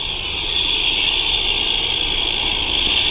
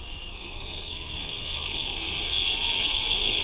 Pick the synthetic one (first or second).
second